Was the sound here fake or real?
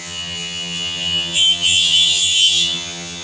fake